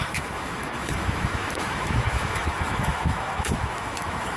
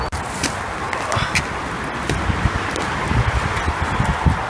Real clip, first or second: second